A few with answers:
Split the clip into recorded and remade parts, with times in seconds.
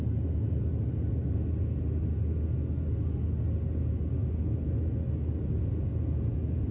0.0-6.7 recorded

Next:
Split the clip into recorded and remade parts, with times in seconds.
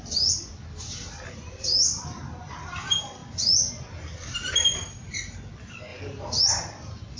0.0-7.2 recorded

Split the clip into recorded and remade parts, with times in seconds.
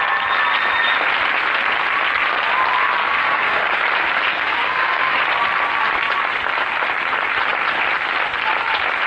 0.0-3.0 recorded; 3.0-3.8 remade; 3.8-4.3 recorded; 4.3-5.2 remade; 5.2-9.1 recorded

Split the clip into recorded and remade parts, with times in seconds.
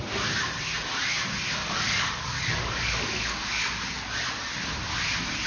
0.0-1.6 recorded; 1.6-3.6 remade; 3.6-5.5 recorded